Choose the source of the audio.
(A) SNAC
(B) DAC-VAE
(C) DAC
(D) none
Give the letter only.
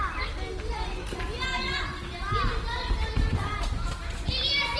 D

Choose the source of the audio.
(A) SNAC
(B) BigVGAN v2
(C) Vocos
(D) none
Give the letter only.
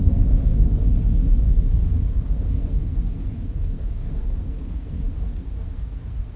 A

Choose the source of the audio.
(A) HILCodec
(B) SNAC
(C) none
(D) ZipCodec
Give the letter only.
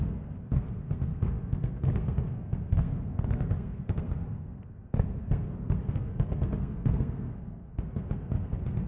B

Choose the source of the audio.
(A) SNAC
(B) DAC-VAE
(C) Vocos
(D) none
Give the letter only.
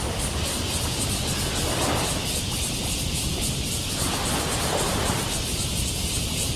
D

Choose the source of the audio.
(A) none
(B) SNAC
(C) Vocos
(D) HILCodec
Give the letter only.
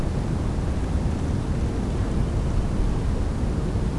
A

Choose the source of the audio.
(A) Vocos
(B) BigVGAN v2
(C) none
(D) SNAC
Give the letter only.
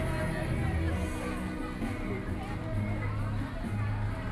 C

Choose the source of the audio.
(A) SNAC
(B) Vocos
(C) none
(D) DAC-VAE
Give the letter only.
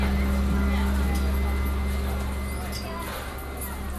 C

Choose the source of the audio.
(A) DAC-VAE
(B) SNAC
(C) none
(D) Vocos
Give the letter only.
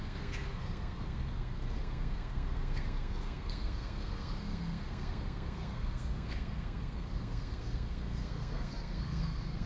B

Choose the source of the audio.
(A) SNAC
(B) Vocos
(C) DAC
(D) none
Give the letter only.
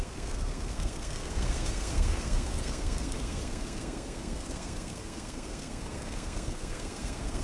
A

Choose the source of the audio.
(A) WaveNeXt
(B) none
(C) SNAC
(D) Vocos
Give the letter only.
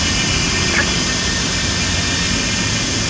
B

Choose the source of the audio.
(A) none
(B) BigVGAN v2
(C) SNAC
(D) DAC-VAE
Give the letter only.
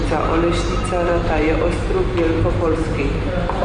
A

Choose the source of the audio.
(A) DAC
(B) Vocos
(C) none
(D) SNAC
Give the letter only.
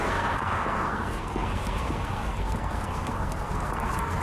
D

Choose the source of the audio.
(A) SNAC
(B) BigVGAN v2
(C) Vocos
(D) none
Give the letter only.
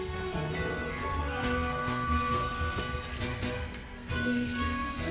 A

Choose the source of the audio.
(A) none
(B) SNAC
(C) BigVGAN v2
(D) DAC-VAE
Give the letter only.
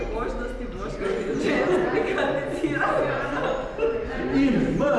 A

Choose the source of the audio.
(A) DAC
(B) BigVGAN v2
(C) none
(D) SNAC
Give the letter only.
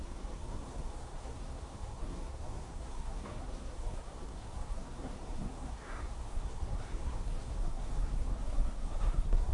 D